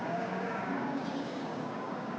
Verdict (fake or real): fake